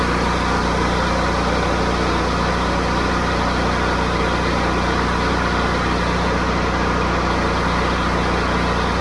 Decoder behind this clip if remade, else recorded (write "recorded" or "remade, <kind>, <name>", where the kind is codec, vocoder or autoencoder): recorded